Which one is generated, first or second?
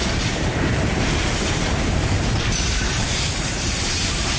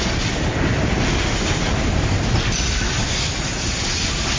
first